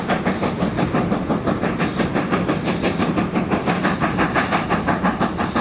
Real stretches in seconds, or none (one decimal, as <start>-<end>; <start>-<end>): 0.0-1.9; 3.4-5.6

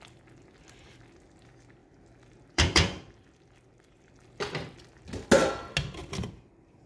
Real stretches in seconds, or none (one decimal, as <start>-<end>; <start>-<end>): 0.0-1.8; 4.2-6.0; 6.5-6.9

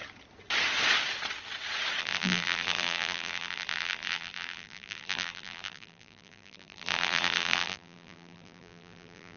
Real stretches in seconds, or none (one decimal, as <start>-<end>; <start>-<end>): 0.0-2.0

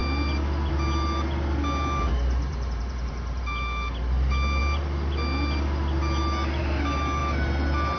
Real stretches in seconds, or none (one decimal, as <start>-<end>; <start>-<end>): 0.0-2.5; 3.4-8.0

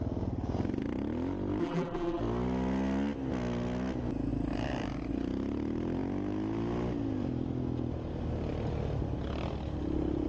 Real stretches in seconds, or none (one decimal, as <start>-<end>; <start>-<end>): 0.0-1.6; 2.2-10.3